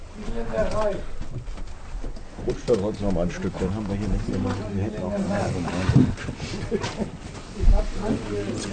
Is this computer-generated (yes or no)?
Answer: no